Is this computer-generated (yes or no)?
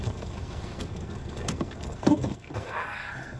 yes